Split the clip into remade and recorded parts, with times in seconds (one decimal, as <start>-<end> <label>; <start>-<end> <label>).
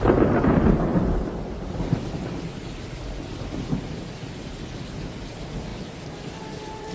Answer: 0.0-2.6 remade; 2.6-5.1 recorded; 5.1-6.9 remade